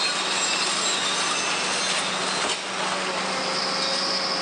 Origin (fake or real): real